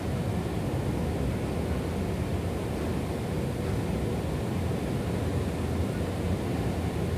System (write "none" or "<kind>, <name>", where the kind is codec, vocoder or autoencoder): none